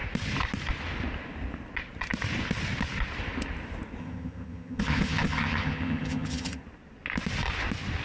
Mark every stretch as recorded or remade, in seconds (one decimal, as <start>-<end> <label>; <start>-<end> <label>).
0.0-4.0 recorded; 4.0-6.6 remade; 6.6-8.0 recorded